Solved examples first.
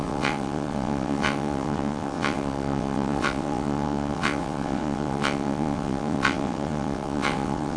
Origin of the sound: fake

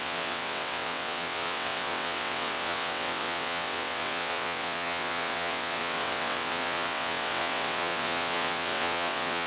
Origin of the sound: fake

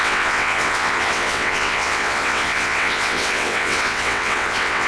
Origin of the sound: fake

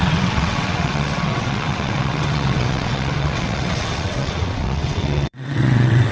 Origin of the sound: fake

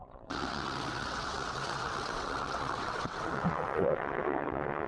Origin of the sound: fake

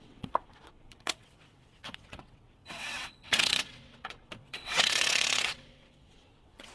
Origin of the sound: fake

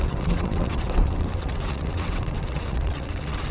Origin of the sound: fake